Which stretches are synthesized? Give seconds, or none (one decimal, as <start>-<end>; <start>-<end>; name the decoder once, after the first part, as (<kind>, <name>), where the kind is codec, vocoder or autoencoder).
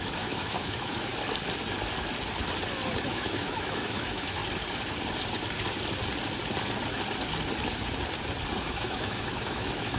0.0-1.1 (autoencoder, DAC-VAE); 3.1-4.4; 8.6-10.0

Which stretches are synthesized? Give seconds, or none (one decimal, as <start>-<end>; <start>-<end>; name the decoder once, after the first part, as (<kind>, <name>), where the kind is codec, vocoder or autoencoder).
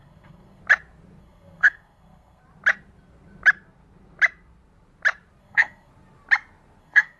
0.0-0.6 (codec, SNAC); 1.2-2.4; 5.4-5.9; 6.8-7.2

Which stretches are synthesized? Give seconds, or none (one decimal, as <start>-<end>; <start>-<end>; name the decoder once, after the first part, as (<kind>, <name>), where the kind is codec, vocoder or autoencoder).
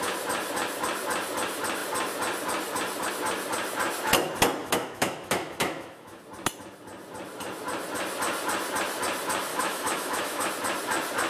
4.6-6.2 (autoencoder, DAC-VAE); 9.5-10.5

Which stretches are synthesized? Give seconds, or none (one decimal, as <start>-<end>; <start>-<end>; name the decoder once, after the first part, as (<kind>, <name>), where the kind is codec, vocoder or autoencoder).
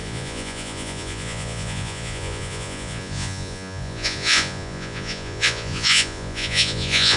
0.0-7.2 (vocoder, Vocos)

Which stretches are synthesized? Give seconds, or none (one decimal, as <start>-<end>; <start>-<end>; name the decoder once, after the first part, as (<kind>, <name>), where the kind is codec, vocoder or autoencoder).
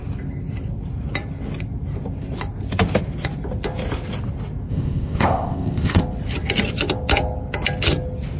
4.7-6.0 (codec, ZipCodec)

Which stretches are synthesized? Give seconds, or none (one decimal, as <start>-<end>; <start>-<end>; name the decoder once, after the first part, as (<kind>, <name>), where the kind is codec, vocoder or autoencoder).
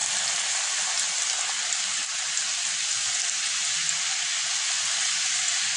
none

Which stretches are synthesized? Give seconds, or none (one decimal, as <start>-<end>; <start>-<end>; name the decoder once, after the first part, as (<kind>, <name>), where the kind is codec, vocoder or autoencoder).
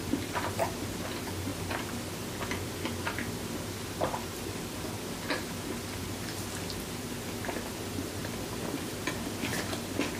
8.2-8.8 (vocoder, BigVGAN v2)